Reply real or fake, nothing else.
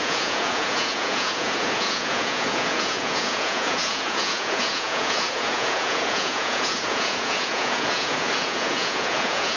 fake